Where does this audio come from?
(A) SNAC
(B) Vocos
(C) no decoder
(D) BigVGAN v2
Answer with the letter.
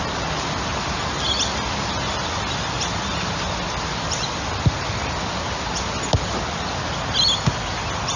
C